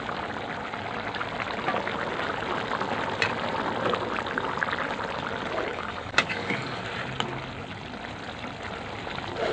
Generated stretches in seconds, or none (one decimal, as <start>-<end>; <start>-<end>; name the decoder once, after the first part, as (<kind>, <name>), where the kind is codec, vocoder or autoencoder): 5.7-6.8 (codec, DAC)